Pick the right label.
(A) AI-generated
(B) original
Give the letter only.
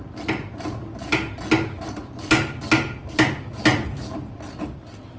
B